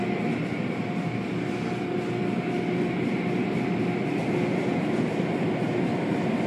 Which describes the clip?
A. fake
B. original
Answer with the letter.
B